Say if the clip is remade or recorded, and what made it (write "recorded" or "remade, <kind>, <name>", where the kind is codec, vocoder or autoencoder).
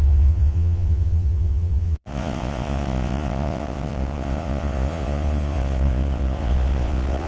remade, vocoder, Vocos